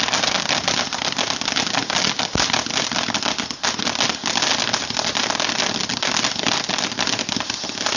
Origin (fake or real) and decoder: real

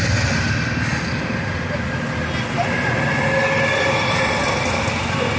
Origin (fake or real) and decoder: real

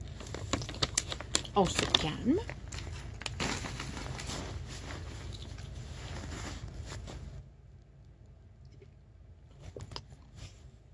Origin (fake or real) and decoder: real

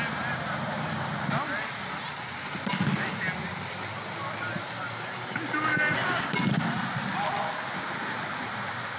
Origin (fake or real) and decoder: real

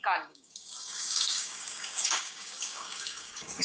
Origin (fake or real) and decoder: fake, codec, DAC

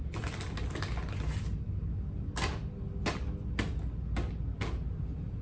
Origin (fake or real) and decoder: real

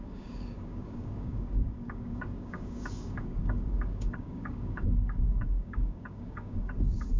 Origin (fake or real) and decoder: fake, codec, DAC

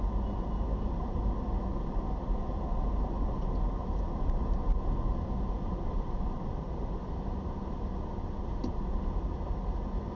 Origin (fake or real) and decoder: real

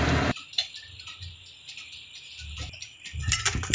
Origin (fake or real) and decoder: real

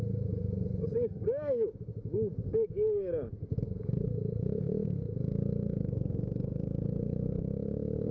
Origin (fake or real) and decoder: fake, codec, DAC